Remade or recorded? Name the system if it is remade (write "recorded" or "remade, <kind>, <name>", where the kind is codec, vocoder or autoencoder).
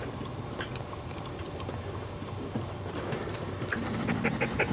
recorded